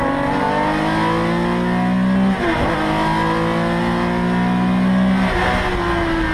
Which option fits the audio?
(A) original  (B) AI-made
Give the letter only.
A